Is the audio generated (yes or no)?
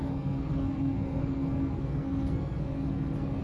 yes